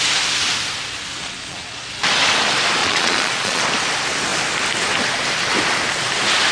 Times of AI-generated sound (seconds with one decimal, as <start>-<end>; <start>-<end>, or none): 1.2-1.9; 2.8-3.6